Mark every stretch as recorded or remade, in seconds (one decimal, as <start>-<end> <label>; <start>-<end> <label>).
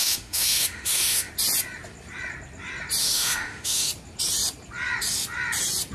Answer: 0.0-1.3 remade; 1.3-3.0 recorded; 3.0-3.9 remade; 3.9-5.9 recorded